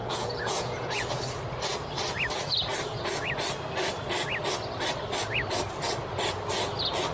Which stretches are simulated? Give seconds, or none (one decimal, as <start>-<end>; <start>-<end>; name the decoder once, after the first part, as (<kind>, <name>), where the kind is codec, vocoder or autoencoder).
0.0-1.2 (vocoder, Vocos)